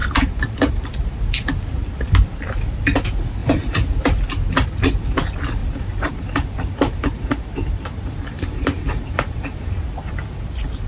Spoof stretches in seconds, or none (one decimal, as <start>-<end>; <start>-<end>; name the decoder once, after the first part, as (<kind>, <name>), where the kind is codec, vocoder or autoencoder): 0.0-0.9 (vocoder, BigVGAN v2); 3.4-3.9; 5.6-9.7